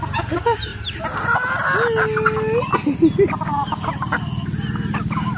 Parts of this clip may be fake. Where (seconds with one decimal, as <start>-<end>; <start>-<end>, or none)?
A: none